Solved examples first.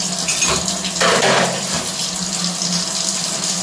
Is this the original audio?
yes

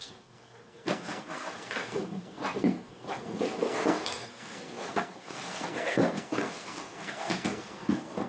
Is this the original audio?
no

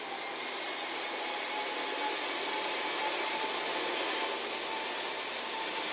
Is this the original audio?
yes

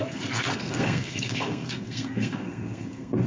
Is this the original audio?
no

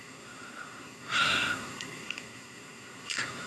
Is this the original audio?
no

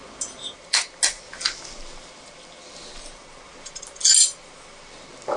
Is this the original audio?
yes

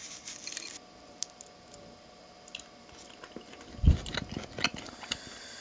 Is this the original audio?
yes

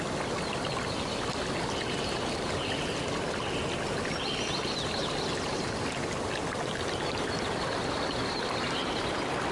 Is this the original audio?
yes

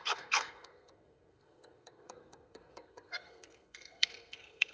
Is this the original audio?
no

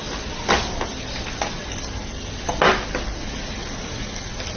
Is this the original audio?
yes